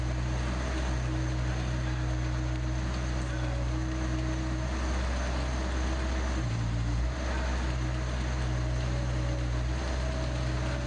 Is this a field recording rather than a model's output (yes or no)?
yes